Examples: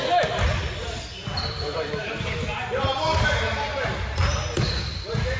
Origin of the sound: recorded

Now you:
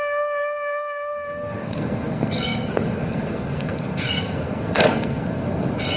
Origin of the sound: remade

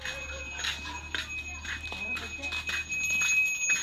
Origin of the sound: recorded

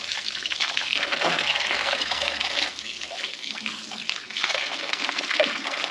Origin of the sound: remade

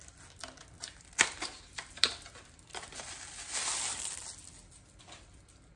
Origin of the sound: recorded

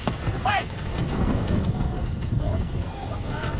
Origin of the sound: remade